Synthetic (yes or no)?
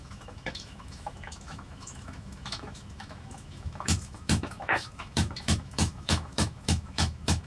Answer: yes